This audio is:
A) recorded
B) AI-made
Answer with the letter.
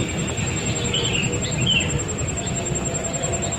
A